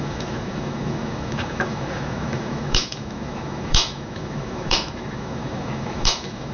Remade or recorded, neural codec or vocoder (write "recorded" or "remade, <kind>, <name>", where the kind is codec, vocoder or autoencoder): remade, autoencoder, DAC-VAE